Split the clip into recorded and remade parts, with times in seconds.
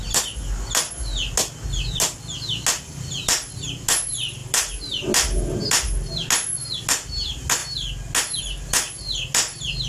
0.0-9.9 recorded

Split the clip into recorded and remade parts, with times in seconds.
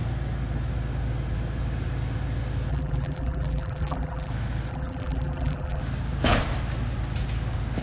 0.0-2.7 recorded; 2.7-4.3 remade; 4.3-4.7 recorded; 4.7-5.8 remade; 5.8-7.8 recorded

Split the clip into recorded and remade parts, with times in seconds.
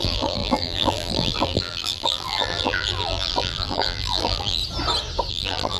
0.0-4.6 remade; 4.6-5.3 recorded; 5.3-5.8 remade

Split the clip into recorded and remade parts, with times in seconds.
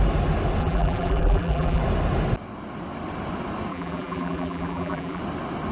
0.0-0.6 recorded; 0.6-1.8 remade; 1.8-3.7 recorded; 3.7-5.2 remade; 5.2-5.7 recorded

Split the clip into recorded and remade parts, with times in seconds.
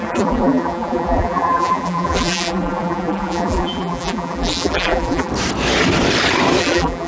0.0-5.3 remade; 5.3-6.6 recorded; 6.6-7.1 remade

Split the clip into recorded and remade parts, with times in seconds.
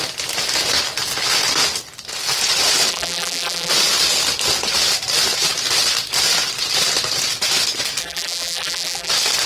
0.0-2.9 recorded; 2.9-3.7 remade; 3.7-8.0 recorded; 8.0-9.1 remade; 9.1-9.5 recorded